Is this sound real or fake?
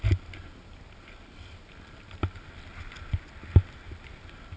real